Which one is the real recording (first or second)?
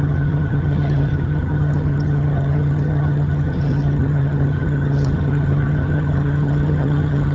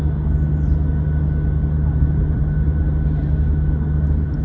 second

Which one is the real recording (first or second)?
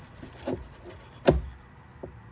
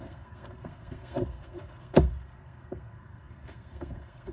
first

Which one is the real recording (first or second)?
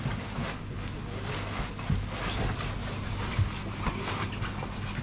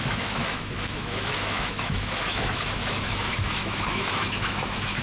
first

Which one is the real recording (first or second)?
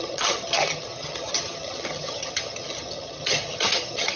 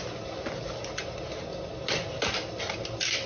second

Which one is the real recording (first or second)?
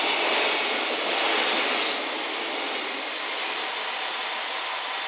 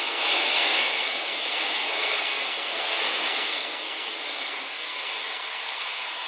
first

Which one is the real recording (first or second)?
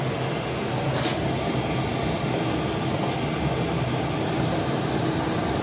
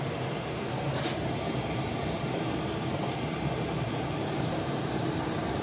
first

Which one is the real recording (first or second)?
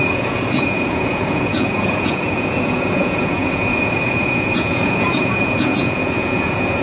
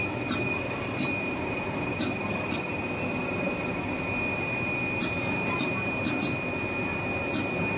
second